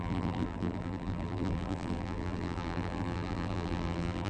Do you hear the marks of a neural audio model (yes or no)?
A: yes